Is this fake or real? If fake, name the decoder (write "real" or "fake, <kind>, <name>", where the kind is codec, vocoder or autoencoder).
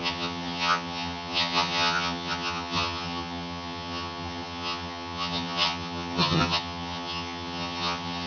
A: fake, vocoder, HiFi-GAN